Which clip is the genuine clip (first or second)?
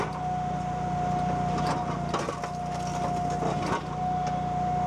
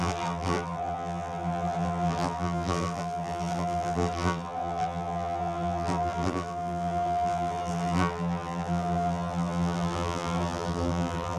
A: first